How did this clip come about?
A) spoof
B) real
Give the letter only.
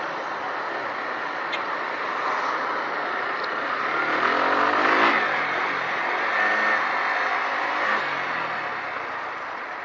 B